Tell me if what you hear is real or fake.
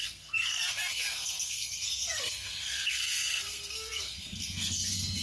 fake